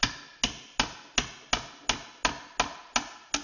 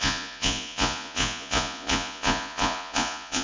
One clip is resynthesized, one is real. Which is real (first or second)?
first